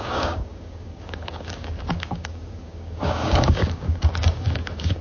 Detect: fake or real fake